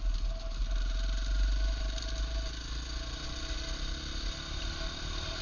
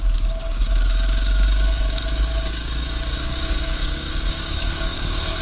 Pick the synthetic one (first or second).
second